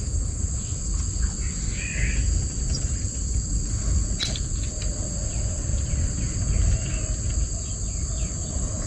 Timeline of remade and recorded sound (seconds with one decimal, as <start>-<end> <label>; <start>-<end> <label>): 0.0-8.9 recorded